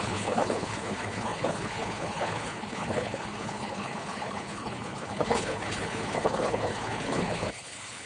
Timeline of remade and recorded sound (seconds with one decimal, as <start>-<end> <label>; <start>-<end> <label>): 0.0-8.1 remade